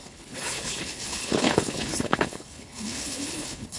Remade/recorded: remade